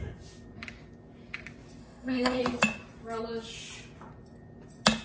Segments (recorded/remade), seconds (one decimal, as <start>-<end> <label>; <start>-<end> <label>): 0.0-1.8 recorded; 1.8-2.4 remade; 2.4-5.0 recorded